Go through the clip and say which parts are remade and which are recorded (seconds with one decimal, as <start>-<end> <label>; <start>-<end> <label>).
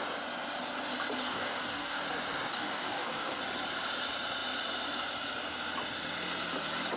0.0-1.2 recorded; 1.2-2.0 remade; 2.0-2.5 recorded; 2.5-3.4 remade; 3.4-7.0 recorded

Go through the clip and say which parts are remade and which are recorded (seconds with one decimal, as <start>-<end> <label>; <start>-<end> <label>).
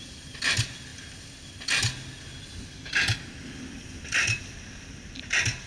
0.0-5.7 recorded